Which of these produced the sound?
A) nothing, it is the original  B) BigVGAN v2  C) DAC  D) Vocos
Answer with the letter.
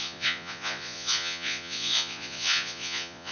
D